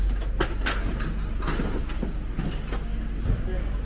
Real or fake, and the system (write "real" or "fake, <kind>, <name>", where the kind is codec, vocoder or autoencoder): real